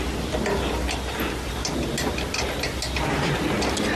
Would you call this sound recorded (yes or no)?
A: yes